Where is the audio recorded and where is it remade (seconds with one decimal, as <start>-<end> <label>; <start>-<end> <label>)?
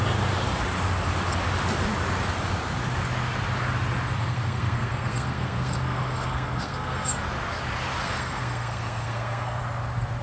0.0-4.2 recorded; 4.2-7.2 remade; 7.2-8.0 recorded; 8.0-9.6 remade; 9.6-10.2 recorded